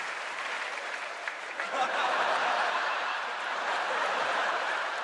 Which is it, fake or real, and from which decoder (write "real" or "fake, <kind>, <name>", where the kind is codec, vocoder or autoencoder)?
fake, vocoder, BigVGAN v2